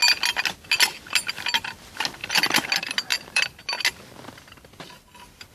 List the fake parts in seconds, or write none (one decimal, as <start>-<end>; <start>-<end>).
2.2-2.7; 3.1-3.6